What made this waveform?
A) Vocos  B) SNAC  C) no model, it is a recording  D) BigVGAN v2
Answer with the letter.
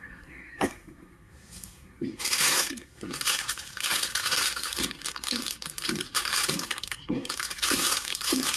B